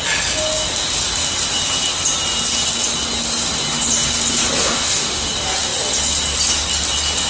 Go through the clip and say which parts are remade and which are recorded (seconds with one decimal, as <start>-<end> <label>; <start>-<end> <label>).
0.0-4.6 recorded; 4.6-5.3 remade; 5.3-7.3 recorded